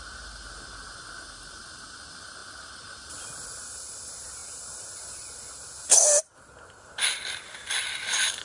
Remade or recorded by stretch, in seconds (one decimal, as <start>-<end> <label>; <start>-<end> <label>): 0.0-4.4 recorded; 4.4-4.9 remade; 4.9-8.4 recorded